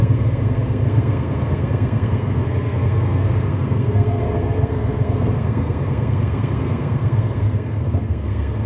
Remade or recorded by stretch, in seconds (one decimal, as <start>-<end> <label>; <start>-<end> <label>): 0.0-8.7 remade